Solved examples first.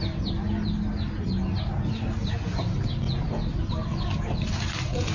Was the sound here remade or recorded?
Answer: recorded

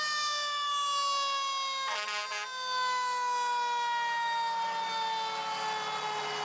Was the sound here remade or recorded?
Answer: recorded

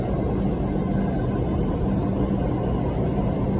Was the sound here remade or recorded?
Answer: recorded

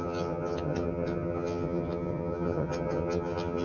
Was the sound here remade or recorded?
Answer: remade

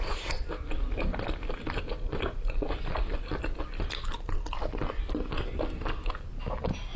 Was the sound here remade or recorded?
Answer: recorded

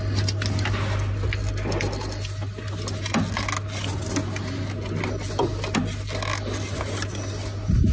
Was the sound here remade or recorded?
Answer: recorded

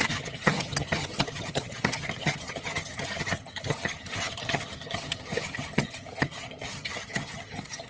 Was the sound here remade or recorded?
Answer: remade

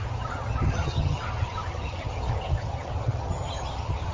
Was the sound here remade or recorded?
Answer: remade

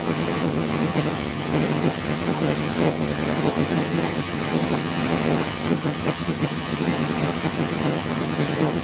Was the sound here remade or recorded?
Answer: remade